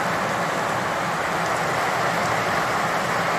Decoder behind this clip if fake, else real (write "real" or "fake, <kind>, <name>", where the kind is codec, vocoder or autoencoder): real